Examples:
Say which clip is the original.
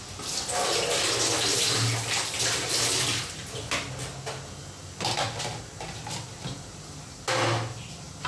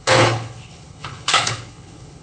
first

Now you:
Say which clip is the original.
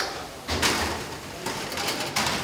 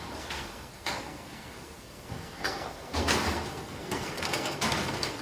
first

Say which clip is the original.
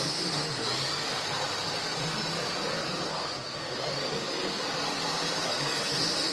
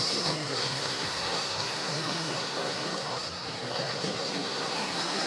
first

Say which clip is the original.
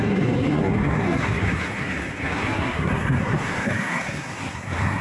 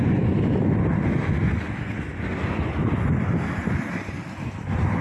second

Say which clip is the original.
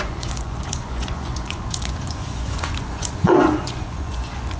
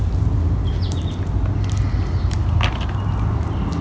second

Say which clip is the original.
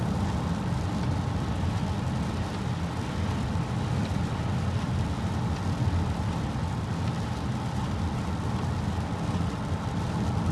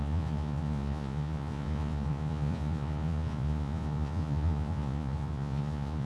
first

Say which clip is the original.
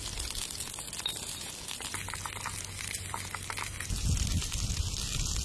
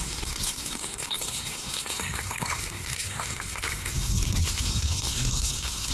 first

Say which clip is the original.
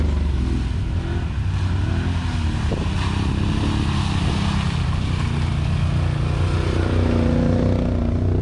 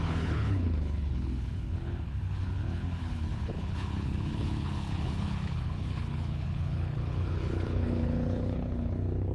first